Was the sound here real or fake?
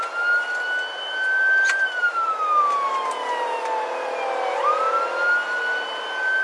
real